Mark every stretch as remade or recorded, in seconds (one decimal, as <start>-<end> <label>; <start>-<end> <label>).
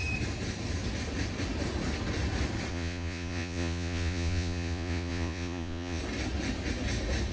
0.0-2.7 recorded; 2.7-6.0 remade; 6.0-7.3 recorded